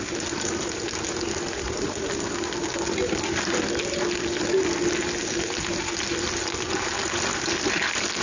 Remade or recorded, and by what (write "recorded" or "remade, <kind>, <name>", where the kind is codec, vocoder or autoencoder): recorded